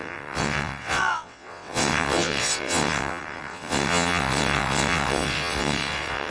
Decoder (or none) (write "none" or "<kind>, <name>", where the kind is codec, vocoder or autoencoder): vocoder, WaveNeXt